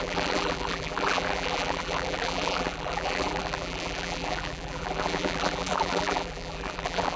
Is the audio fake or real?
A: fake